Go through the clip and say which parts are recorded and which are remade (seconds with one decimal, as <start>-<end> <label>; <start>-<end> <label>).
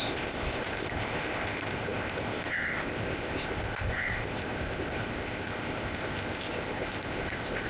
0.0-7.7 remade